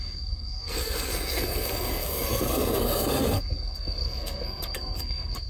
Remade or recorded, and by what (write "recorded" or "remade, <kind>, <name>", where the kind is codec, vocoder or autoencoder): remade, codec, SNAC